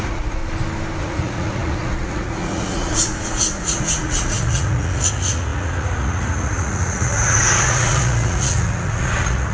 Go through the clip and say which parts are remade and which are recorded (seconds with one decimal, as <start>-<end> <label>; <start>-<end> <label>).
0.0-0.4 remade; 0.4-1.0 recorded; 1.0-9.5 remade